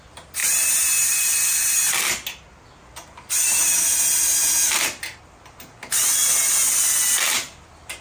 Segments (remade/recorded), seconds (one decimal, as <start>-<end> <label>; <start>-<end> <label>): 0.0-8.0 recorded